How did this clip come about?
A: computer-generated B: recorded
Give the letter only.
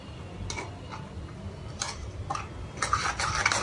B